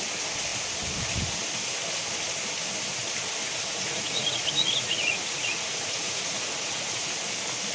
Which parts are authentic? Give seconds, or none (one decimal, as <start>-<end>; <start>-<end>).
0.0-3.4; 7.1-7.7